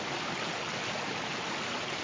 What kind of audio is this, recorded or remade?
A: recorded